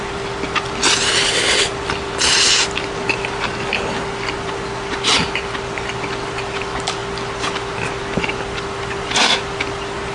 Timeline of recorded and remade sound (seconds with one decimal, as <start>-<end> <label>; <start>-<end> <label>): 0.0-10.1 recorded